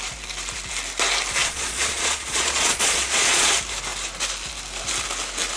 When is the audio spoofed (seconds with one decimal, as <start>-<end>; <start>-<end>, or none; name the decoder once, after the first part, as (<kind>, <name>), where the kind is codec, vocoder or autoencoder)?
1.4-3.5 (vocoder, Vocos)